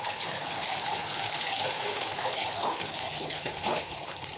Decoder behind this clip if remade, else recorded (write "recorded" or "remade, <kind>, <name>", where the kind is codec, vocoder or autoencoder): remade, codec, HILCodec